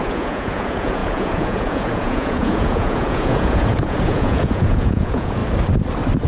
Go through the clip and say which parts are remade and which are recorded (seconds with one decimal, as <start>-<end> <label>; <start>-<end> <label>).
0.0-5.4 remade; 5.4-6.3 recorded